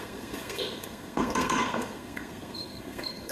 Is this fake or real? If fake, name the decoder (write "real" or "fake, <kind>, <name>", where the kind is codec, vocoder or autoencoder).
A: fake, codec, SNAC